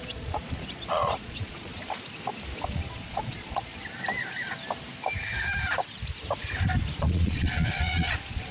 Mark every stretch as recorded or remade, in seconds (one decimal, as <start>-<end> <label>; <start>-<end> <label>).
0.0-1.8 remade; 1.8-2.7 recorded; 2.7-3.7 remade; 3.7-7.0 recorded; 7.0-8.5 remade

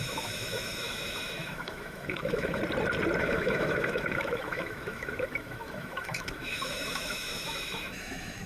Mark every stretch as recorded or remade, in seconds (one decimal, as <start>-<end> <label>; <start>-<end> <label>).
0.0-2.6 remade; 2.6-3.2 recorded; 3.2-8.5 remade

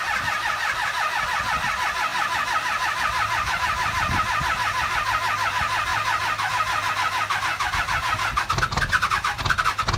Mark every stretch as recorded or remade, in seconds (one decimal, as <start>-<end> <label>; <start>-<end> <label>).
0.0-2.1 recorded; 2.1-4.9 remade; 4.9-7.5 recorded; 7.5-8.9 remade; 8.9-10.0 recorded

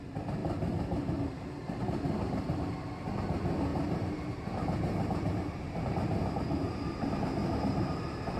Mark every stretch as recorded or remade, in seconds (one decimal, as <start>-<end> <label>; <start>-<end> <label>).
0.0-3.7 recorded; 3.7-5.7 remade; 5.7-7.4 recorded; 7.4-8.4 remade

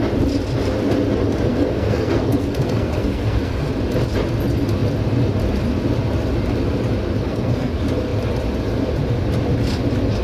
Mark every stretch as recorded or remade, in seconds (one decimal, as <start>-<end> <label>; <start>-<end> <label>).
0.0-1.5 recorded; 1.5-3.7 remade; 3.7-7.2 recorded; 7.2-7.7 remade; 7.7-10.2 recorded

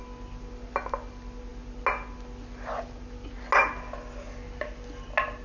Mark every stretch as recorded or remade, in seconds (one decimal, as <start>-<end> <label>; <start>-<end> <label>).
0.0-5.4 recorded